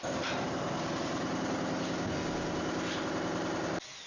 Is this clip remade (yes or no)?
no